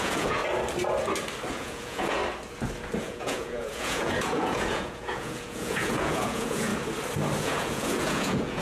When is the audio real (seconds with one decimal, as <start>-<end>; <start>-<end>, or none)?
0.4-1.5; 2.2-3.0; 6.7-7.4